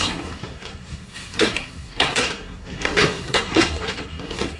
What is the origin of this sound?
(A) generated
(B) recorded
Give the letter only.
A